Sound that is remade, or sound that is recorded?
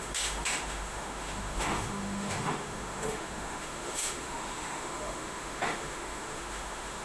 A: remade